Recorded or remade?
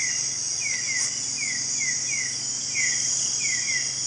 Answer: recorded